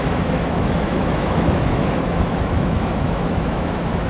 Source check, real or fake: fake